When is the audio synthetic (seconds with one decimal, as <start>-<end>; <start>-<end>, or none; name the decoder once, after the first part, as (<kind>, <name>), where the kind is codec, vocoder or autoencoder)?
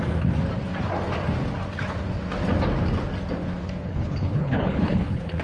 3.8-5.4 (codec, HILCodec)